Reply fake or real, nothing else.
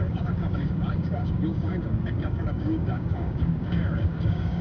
fake